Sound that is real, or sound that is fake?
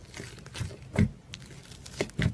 real